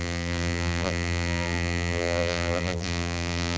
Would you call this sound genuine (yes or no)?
no